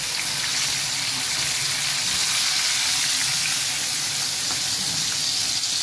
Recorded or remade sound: recorded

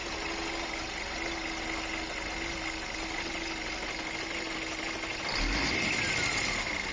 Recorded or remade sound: recorded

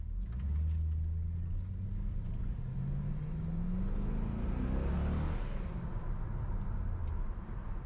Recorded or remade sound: recorded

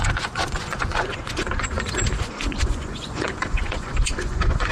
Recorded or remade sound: remade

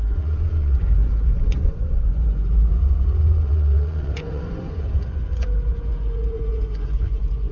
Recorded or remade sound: remade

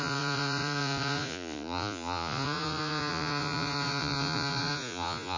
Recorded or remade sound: remade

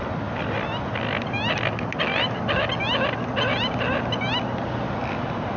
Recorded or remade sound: recorded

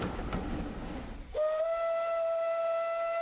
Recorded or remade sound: recorded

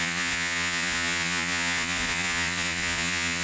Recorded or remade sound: remade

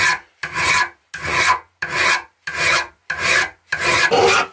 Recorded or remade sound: recorded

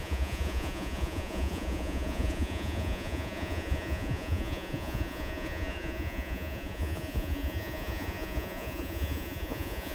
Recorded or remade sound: remade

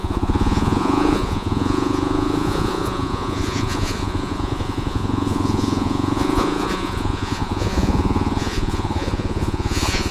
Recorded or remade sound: remade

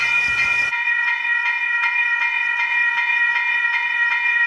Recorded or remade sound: remade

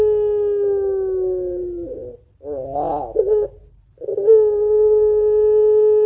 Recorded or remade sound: recorded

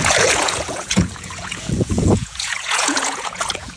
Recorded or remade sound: remade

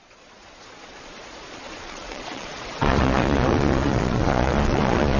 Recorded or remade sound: remade